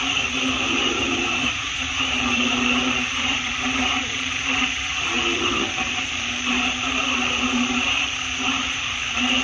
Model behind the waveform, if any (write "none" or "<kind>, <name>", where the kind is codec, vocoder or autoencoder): vocoder, BigVGAN v2